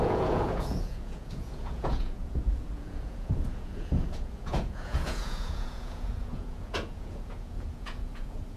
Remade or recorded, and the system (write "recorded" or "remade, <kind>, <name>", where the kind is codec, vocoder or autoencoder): remade, vocoder, Vocos